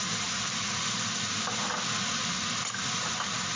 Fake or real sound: real